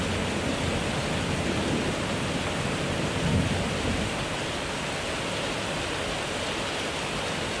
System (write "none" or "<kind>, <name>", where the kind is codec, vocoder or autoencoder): none